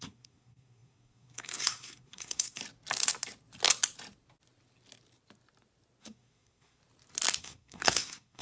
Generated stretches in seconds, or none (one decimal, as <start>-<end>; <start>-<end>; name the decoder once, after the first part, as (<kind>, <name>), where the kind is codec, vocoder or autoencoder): 0.0-2.6 (codec, SNAC); 6.0-6.8; 7.4-8.4